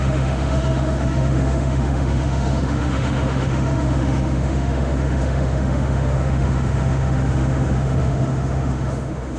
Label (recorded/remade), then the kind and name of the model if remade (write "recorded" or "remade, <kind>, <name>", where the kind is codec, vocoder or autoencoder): remade, autoencoder, DAC-VAE